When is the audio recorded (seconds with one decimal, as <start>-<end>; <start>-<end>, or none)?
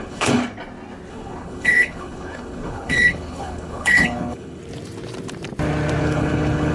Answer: 0.4-1.1; 4.6-6.0